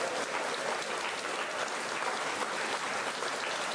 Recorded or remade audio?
recorded